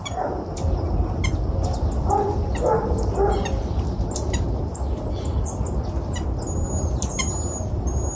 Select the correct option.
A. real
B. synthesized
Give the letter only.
A